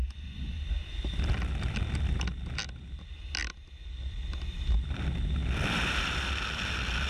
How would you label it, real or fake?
real